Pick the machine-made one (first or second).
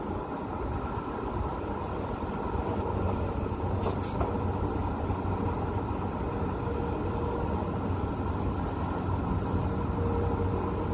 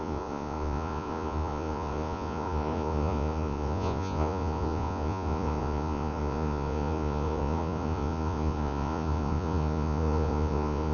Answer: second